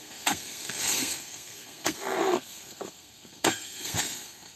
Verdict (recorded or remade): remade